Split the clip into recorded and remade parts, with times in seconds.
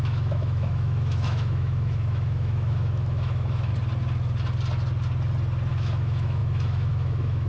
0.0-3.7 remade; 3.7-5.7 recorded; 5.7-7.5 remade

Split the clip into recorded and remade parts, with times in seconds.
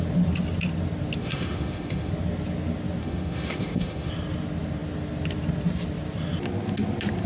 0.0-1.2 recorded; 1.2-2.1 remade; 2.1-3.0 recorded; 3.0-4.1 remade; 4.1-7.3 recorded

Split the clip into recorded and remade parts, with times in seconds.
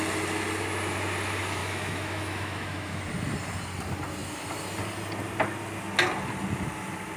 0.0-1.6 recorded; 1.6-3.0 remade; 3.0-7.2 recorded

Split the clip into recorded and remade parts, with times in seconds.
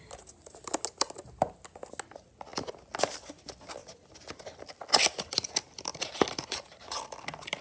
0.0-7.6 recorded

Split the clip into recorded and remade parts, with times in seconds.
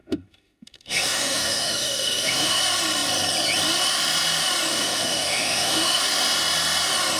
0.0-2.6 remade; 2.6-4.7 recorded; 4.7-6.0 remade; 6.0-7.2 recorded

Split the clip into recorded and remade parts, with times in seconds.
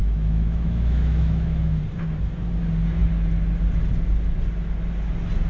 0.0-1.8 remade; 1.8-5.5 recorded